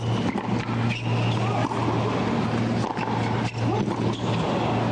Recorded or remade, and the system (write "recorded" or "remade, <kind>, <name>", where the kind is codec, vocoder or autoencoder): recorded